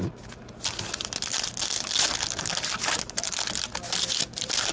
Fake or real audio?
real